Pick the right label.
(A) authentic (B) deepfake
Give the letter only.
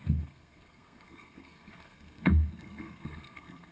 B